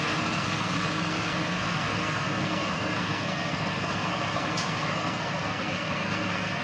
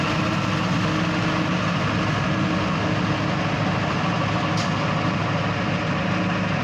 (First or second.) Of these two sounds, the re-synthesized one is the first